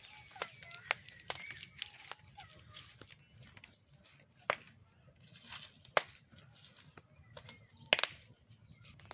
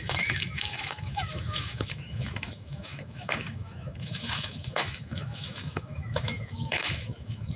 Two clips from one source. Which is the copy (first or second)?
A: second